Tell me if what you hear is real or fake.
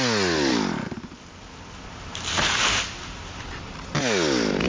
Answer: real